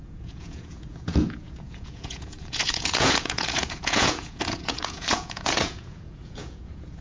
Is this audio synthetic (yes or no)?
yes